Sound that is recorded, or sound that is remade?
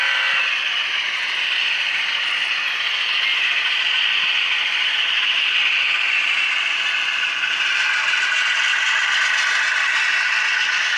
recorded